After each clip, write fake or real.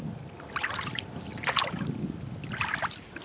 fake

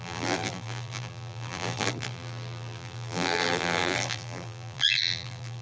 fake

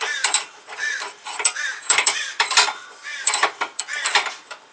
fake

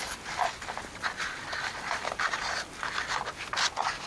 real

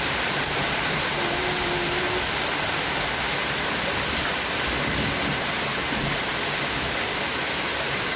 real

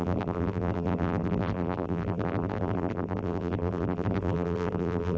fake